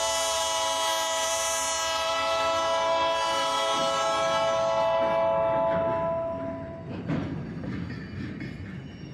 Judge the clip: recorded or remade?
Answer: recorded